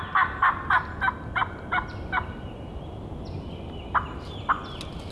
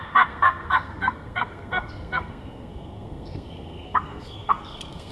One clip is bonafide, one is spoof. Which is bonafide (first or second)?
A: first